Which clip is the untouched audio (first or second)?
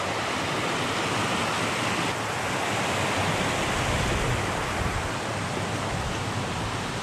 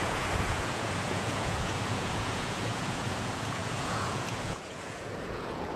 first